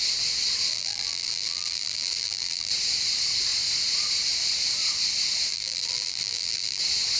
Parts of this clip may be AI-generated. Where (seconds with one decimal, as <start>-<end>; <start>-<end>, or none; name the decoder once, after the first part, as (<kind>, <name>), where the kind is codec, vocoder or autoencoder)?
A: 0.7-2.7 (vocoder, BigVGAN v2); 5.5-6.8